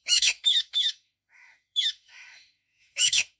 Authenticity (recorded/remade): remade